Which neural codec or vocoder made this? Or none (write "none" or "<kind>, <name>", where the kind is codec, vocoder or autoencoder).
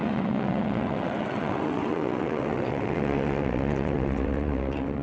vocoder, WaveNeXt